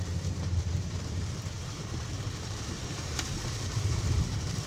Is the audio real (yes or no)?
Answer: no